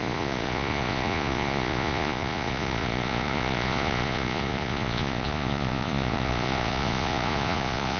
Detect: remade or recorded remade